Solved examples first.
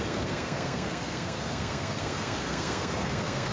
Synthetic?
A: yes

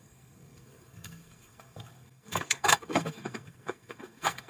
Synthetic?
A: yes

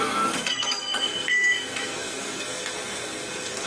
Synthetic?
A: yes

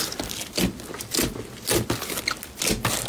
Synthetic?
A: no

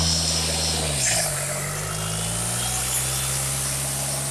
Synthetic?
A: no